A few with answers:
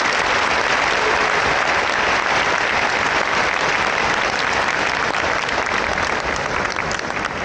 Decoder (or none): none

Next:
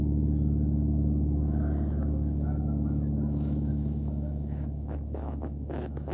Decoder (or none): autoencoder, DAC-VAE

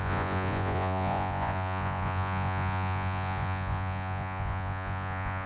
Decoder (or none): vocoder, Vocos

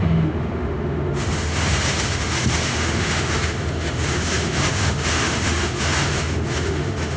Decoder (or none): autoencoder, DAC-VAE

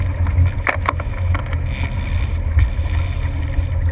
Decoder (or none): none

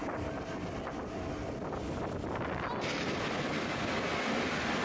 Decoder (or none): none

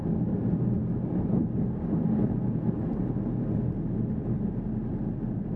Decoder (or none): none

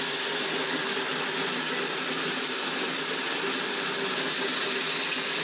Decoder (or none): none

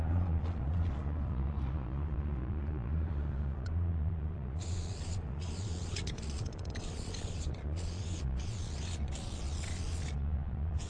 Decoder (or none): vocoder, Vocos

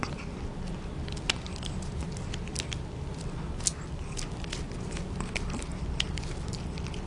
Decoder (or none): none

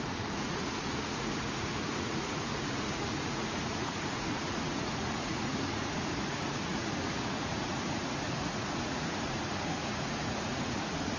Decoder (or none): vocoder, Vocos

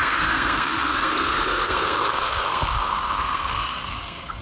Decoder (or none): codec, SNAC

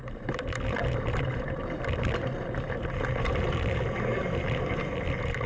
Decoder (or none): vocoder, BigVGAN v2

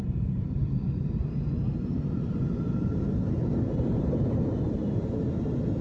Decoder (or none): none